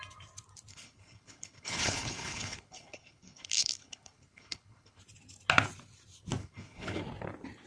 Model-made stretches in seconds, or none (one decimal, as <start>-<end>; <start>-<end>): 0.7-5.0; 6.4-7.0

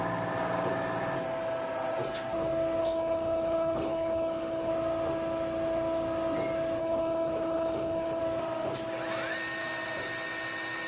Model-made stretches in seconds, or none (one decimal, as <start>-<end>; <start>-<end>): 2.8-4.7; 6.8-8.2